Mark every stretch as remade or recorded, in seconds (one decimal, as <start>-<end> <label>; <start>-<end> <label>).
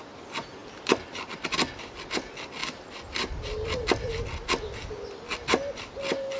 0.0-0.6 recorded; 0.6-1.3 remade; 1.3-6.4 recorded